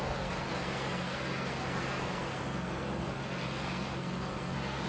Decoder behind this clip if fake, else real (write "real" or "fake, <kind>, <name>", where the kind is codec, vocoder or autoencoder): fake, codec, SNAC